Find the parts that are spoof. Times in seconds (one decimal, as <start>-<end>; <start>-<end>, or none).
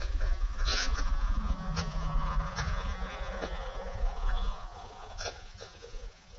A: 0.0-6.4